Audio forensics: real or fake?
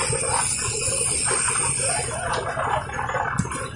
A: real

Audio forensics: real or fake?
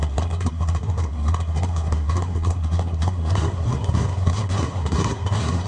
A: fake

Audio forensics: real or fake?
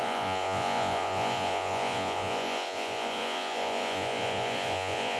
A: fake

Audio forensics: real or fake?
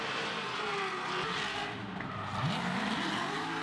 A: real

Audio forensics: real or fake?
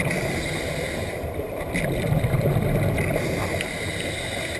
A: real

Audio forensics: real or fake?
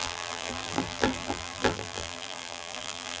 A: fake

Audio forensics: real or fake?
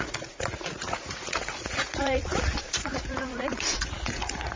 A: fake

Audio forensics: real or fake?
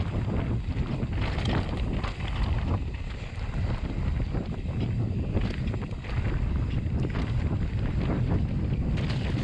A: real